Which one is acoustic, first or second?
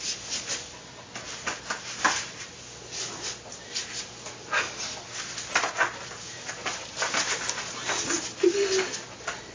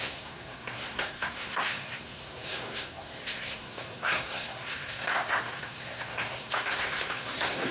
first